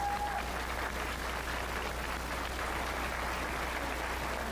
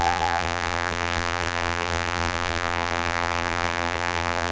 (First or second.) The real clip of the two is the first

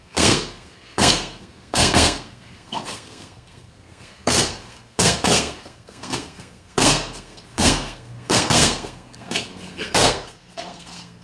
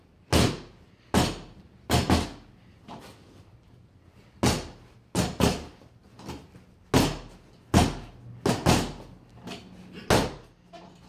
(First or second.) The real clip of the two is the second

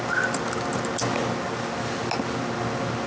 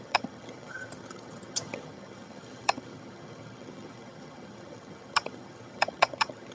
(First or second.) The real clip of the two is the first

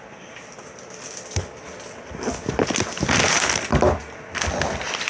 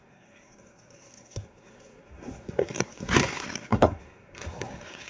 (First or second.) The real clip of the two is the first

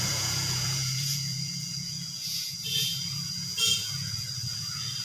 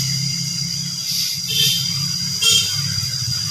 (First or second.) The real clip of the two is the second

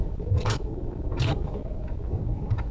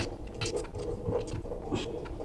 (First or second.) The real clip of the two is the second